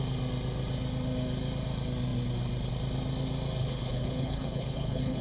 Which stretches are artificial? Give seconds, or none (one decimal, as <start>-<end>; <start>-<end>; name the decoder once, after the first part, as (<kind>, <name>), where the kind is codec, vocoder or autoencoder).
3.6-5.2 (codec, HILCodec)

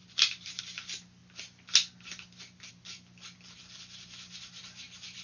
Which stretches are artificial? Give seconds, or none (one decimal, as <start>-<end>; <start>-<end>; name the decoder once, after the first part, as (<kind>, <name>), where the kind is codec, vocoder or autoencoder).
none

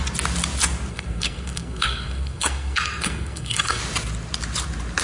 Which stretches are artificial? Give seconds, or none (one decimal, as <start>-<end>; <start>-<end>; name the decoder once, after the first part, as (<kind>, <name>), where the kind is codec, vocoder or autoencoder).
0.9-3.8 (codec, SNAC)

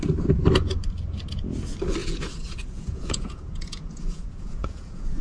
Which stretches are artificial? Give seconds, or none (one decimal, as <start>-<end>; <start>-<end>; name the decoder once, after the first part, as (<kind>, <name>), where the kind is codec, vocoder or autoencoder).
2.0-5.2 (vocoder, Vocos)

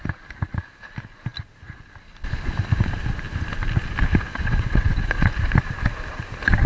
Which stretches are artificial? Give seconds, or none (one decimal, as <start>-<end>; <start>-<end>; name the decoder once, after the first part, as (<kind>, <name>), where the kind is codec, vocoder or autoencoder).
4.3-5.3 (vocoder, WaveNeXt)

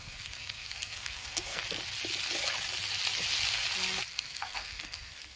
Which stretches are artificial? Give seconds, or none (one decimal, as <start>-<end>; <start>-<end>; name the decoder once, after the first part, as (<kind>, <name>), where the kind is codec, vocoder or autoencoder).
0.0-1.6 (codec, SNAC); 4.1-5.4

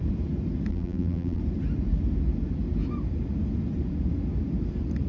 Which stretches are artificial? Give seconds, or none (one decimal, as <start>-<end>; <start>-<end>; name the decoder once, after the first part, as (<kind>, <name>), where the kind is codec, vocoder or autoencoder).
0.7-1.4 (vocoder, BigVGAN v2)

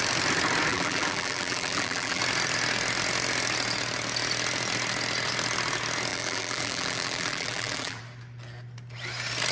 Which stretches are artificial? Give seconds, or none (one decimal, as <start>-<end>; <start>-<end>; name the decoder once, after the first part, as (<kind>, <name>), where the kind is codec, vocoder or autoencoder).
0.7-2.2 (vocoder, BigVGAN v2); 6.1-8.0